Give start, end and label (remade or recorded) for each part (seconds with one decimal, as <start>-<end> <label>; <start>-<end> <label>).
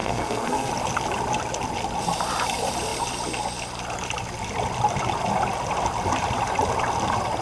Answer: 0.0-0.7 remade; 0.7-7.4 recorded